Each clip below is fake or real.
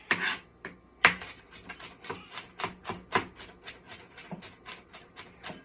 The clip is real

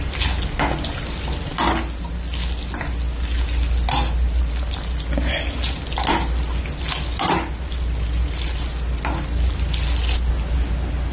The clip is real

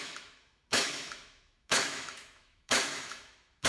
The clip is fake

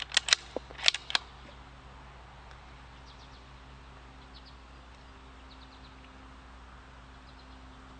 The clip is real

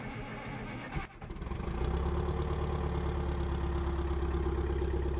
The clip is real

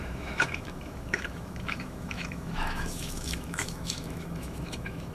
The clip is fake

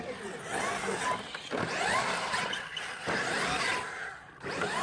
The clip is real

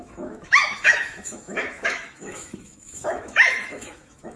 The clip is fake